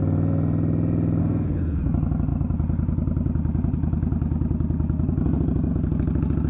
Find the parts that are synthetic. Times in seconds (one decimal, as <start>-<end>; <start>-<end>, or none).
1.2-1.8